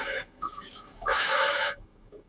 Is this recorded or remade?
remade